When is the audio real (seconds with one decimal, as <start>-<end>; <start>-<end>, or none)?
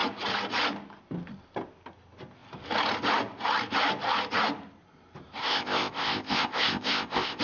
0.0-5.4